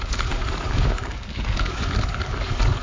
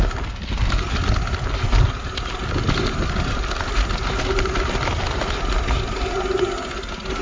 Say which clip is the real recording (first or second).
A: second